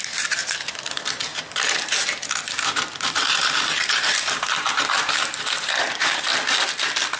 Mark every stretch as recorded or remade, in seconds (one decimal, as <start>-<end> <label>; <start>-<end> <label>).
0.0-6.3 remade; 6.3-7.2 recorded